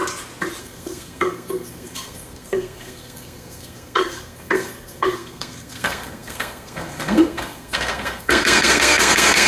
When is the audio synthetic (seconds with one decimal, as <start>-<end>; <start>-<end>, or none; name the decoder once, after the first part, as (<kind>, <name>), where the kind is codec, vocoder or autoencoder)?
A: 0.6-9.5 (codec, SNAC)